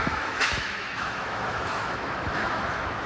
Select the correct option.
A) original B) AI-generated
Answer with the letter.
B